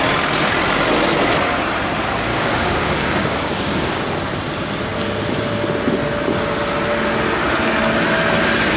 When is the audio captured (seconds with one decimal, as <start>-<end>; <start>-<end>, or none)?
0.0-2.3; 4.0-8.8